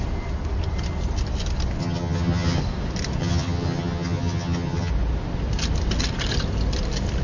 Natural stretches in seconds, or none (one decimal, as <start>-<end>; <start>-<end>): 0.0-1.8; 2.6-3.2; 4.9-7.2